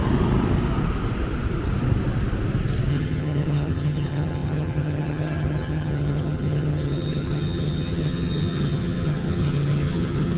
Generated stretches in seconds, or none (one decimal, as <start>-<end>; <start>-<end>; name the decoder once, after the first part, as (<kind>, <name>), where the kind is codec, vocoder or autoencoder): 2.9-10.4 (vocoder, HiFi-GAN)